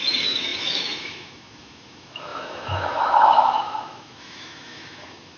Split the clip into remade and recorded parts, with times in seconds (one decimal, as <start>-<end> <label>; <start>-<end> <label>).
0.0-5.4 remade

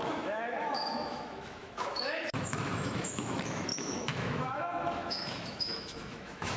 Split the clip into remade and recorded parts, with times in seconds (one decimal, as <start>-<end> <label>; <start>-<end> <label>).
0.0-6.6 remade

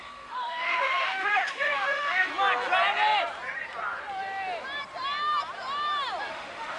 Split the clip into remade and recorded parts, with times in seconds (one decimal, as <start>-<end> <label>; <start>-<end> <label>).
0.0-2.3 remade; 2.3-6.3 recorded; 6.3-6.8 remade

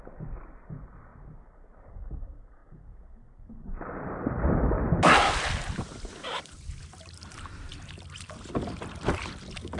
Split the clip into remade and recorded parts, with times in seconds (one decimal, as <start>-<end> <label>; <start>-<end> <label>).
0.0-9.8 recorded